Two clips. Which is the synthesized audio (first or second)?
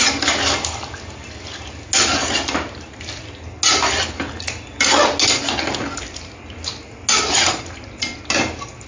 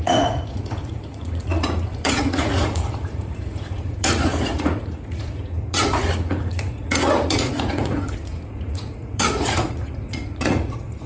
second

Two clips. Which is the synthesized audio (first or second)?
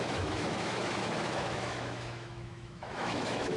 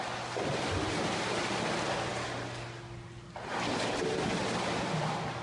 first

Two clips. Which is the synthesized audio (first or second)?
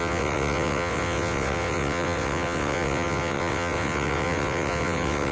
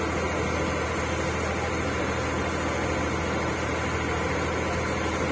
first